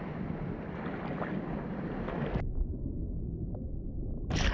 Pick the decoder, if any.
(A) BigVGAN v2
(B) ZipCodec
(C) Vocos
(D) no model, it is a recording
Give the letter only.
D